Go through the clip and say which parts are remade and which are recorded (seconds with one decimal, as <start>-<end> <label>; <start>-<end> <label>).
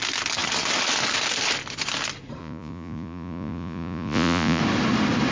0.0-2.4 recorded; 2.4-4.6 remade; 4.6-5.3 recorded